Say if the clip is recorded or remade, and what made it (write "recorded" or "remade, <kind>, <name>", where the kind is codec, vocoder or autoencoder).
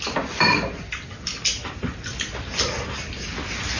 recorded